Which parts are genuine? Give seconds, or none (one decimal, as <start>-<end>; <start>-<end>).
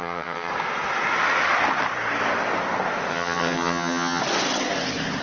0.5-3.1; 4.2-5.2